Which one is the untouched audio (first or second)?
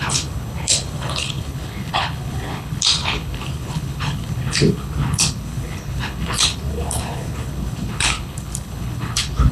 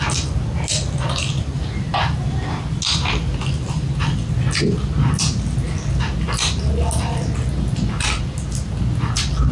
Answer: second